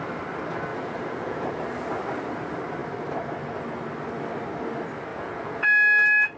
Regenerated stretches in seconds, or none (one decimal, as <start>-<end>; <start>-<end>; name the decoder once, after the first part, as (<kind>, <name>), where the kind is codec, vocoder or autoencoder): 0.7-1.5 (vocoder, Vocos); 5.1-5.6